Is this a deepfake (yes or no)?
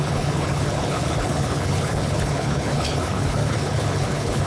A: yes